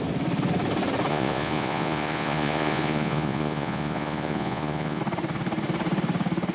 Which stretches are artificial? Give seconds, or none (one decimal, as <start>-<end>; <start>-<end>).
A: 1.1-5.0